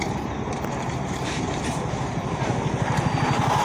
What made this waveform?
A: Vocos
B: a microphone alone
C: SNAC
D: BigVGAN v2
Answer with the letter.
D